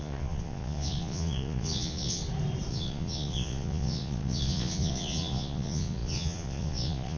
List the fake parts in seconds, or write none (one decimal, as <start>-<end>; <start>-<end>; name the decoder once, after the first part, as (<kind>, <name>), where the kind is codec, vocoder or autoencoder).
0.0-2.2 (vocoder, Vocos); 2.7-7.2